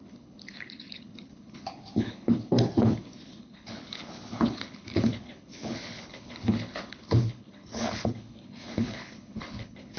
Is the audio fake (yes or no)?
yes